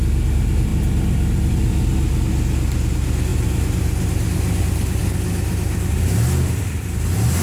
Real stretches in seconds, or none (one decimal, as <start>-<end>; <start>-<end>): 0.0-7.4